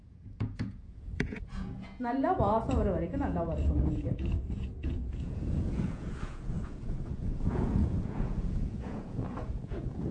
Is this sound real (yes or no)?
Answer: no